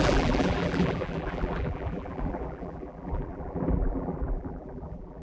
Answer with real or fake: fake